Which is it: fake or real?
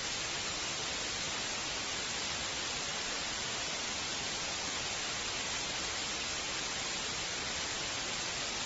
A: fake